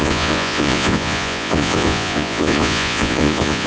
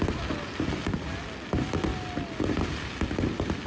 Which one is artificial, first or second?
first